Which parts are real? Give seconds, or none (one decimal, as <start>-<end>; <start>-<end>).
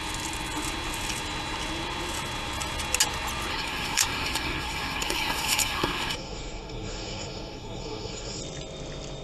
0.0-3.5; 8.4-9.2